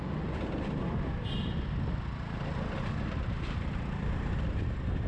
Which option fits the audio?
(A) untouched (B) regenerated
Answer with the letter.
A